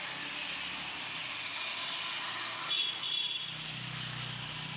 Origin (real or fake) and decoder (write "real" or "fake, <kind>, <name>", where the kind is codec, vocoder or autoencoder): real